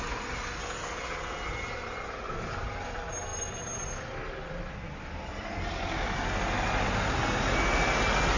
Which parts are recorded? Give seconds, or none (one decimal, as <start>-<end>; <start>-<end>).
0.0-8.4